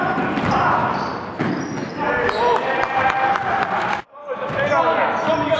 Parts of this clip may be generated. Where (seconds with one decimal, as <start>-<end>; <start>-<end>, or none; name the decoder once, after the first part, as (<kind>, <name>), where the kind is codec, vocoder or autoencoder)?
1.8-3.3 (vocoder, BigVGAN v2)